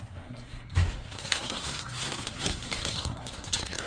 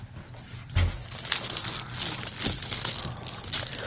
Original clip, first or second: second